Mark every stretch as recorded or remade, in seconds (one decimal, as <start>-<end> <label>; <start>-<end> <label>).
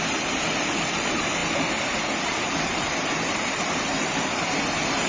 0.0-5.1 recorded